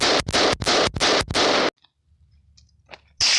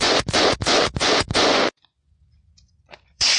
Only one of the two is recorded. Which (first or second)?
first